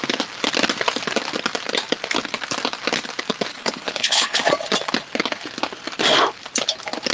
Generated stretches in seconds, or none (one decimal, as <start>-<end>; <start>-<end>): 3.5-4.5